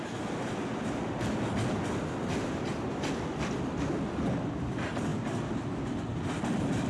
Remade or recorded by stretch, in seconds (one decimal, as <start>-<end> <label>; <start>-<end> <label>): 0.0-6.9 recorded